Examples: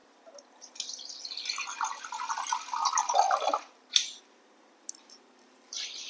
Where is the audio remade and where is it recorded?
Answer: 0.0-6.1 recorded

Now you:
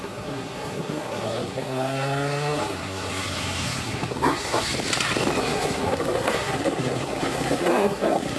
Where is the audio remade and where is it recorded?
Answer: 0.0-4.7 remade; 4.7-5.4 recorded; 5.4-8.4 remade

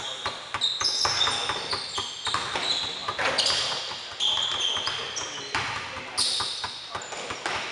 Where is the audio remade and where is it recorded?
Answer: 0.0-3.0 recorded; 3.0-3.8 remade; 3.8-7.7 recorded

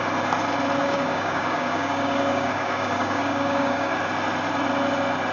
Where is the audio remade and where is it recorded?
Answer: 0.0-0.8 recorded; 0.8-4.0 remade; 4.0-5.3 recorded

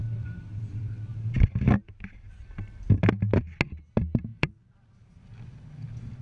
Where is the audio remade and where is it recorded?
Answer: 0.0-0.7 remade; 0.7-1.1 recorded; 1.1-3.1 remade; 3.1-4.3 recorded; 4.3-5.3 remade; 5.3-6.2 recorded

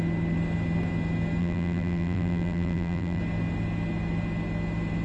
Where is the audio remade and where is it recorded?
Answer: 0.0-1.4 recorded; 1.4-3.2 remade; 3.2-5.0 recorded

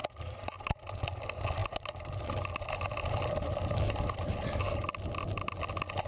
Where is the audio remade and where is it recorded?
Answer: 0.0-0.6 remade; 0.6-1.6 recorded; 1.6-4.6 remade; 4.6-6.1 recorded

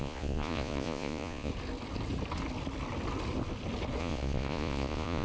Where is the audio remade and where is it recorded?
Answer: 0.0-1.5 remade; 1.5-4.0 recorded; 4.0-5.2 remade